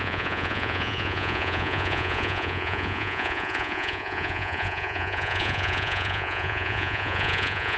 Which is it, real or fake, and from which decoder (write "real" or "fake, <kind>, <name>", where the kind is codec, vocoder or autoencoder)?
fake, vocoder, Vocos